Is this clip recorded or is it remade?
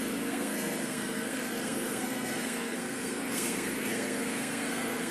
remade